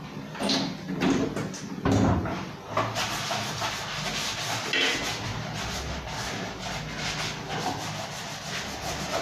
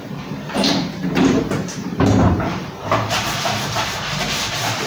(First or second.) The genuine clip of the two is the first